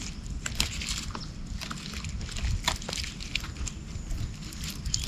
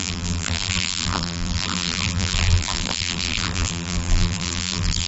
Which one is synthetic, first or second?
second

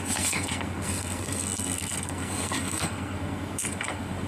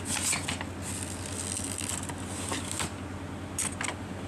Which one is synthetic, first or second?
first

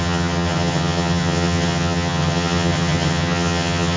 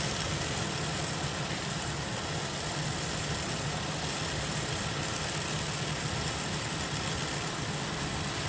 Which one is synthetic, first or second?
first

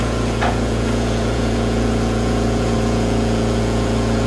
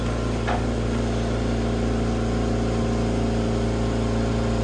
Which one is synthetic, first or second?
first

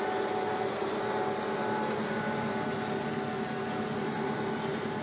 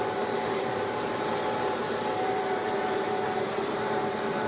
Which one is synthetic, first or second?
second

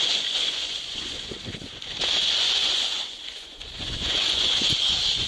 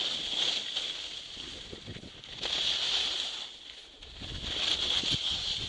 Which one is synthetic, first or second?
first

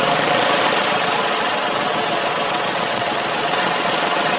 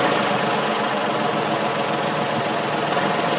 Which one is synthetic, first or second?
first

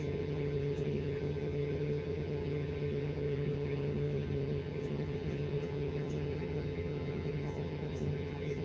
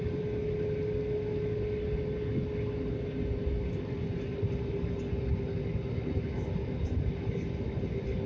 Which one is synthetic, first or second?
first